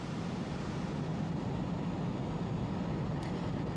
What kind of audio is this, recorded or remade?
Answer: recorded